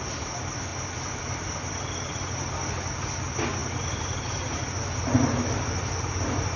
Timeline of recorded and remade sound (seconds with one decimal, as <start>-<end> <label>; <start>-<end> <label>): 0.0-6.6 recorded